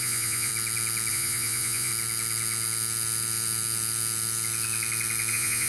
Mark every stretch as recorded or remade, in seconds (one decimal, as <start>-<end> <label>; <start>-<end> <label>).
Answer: 0.0-0.5 remade; 0.5-1.1 recorded; 1.1-1.9 remade; 1.9-5.3 recorded; 5.3-5.7 remade